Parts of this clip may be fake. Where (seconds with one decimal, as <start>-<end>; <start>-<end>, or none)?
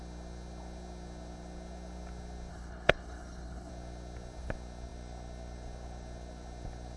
2.5-3.7